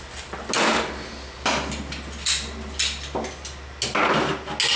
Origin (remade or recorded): recorded